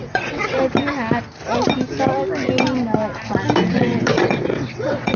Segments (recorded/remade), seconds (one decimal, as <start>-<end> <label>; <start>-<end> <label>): 0.0-0.6 remade; 0.6-3.7 recorded; 3.7-5.2 remade